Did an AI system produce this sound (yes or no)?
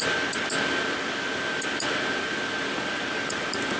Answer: no